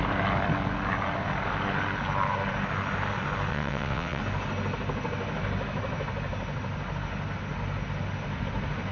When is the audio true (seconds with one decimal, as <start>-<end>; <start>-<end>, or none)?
0.0-3.5; 4.2-8.9

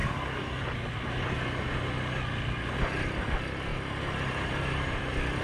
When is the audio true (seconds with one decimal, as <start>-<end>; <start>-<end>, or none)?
0.0-3.7; 5.0-5.4